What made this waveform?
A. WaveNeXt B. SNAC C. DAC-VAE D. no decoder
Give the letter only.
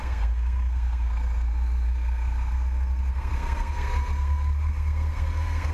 B